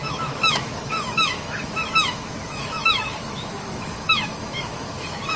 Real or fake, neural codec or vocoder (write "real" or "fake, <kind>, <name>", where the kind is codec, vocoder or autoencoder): fake, autoencoder, DAC-VAE